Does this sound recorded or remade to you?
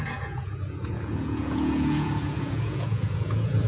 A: remade